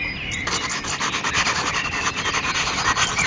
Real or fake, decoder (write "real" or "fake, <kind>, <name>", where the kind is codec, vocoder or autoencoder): real